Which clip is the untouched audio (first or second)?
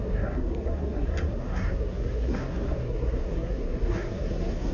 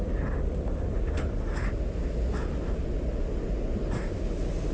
second